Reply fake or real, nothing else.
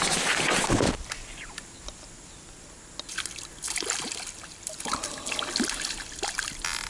real